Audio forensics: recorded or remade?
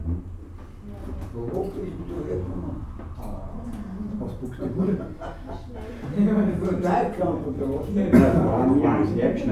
recorded